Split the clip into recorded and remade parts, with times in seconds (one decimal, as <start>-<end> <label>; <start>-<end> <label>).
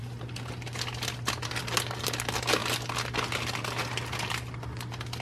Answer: 0.0-5.2 recorded